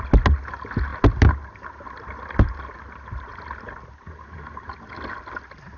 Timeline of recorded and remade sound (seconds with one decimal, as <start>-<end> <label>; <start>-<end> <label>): 0.0-5.8 recorded